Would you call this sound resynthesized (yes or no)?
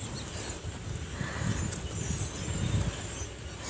no